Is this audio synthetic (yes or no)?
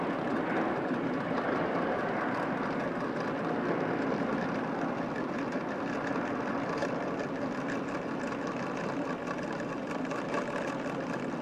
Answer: no